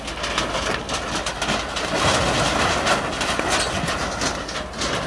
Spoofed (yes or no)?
no